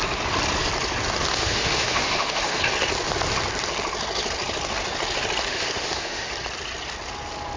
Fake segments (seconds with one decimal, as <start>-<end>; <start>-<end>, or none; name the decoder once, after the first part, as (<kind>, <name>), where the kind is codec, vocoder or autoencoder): 1.3-2.6 (autoencoder, DAC-VAE); 5.5-6.3